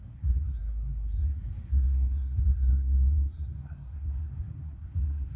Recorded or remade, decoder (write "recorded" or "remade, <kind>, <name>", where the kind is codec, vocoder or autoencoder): remade, codec, SNAC